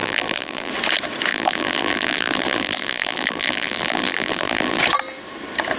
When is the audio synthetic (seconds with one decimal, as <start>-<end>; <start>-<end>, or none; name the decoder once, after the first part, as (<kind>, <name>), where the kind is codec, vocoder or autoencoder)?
0.0-0.7 (vocoder, BigVGAN v2); 1.3-4.8